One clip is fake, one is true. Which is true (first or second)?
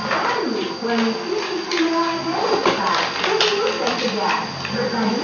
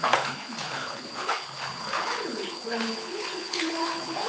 first